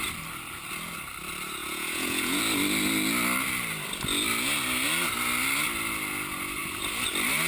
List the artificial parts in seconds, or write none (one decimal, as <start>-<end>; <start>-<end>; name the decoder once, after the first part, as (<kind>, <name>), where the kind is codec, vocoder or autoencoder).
1.6-2.4 (vocoder, Vocos)